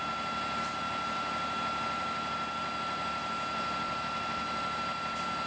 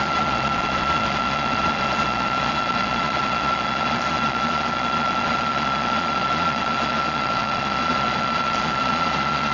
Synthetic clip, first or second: second